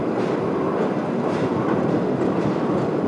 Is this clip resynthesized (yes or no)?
no